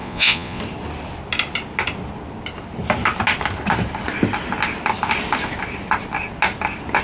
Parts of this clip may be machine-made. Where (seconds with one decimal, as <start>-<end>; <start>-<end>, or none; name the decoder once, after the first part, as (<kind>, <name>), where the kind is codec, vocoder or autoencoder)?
0.0-0.6 (vocoder, Vocos)